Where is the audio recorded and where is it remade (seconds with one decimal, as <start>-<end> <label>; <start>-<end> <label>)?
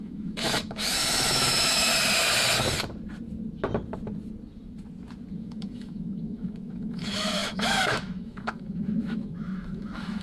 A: 0.0-1.9 remade; 1.9-5.4 recorded; 5.4-10.2 remade